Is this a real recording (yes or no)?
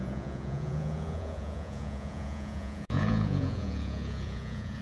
no